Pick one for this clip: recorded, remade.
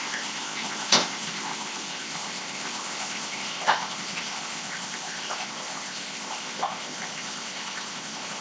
remade